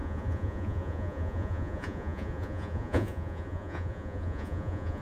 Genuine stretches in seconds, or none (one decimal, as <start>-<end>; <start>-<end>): none